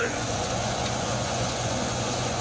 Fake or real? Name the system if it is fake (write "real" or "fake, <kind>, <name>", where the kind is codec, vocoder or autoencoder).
fake, vocoder, Vocos